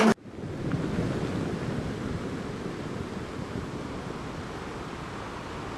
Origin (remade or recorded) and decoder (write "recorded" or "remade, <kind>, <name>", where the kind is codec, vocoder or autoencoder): recorded